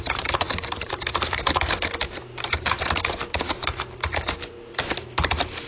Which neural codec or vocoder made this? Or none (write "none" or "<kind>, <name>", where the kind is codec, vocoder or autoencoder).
vocoder, BigVGAN v2